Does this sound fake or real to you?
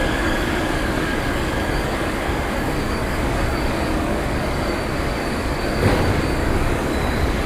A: fake